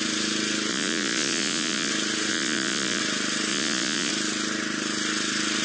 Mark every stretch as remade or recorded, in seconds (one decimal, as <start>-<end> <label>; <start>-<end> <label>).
0.0-0.7 recorded; 0.7-1.9 remade; 1.9-2.3 recorded; 2.3-3.0 remade; 3.0-3.5 recorded; 3.5-4.1 remade; 4.1-5.6 recorded

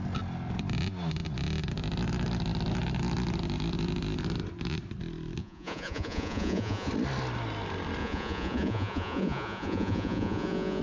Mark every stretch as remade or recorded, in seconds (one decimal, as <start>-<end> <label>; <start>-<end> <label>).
0.0-5.4 recorded; 5.4-6.9 remade; 6.9-8.0 recorded; 8.0-10.8 remade

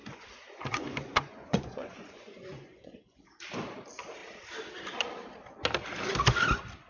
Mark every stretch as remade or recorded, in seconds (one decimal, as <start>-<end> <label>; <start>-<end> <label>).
0.0-3.2 remade; 3.2-6.9 recorded

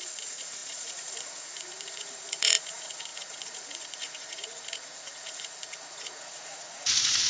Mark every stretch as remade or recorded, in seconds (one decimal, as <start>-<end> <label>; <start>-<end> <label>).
0.0-7.3 remade